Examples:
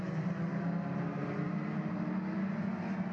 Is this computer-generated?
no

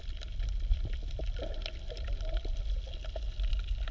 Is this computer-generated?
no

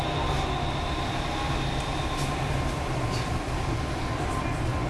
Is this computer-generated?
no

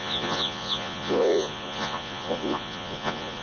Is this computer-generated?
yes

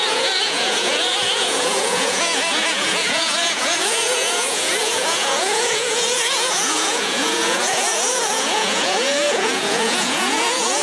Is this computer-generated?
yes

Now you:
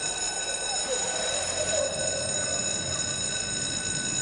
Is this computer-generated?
no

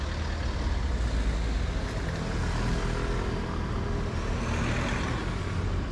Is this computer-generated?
no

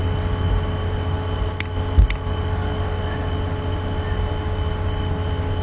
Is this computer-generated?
no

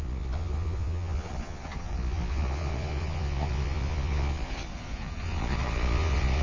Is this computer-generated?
yes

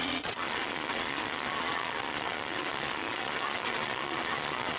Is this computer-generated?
yes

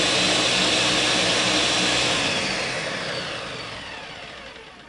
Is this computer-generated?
no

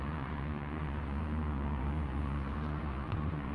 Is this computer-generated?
yes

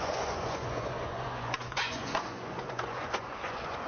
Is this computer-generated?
yes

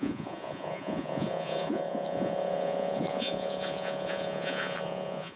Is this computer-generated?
yes